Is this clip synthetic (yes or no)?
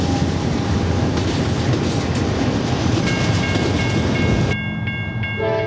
no